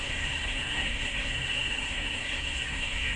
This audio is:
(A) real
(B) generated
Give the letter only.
B